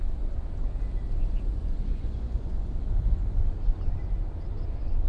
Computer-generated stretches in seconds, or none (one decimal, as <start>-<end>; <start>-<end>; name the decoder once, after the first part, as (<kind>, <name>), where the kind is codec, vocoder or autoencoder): 1.6-3.5 (vocoder, Vocos)